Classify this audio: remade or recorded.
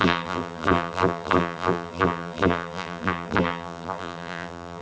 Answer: remade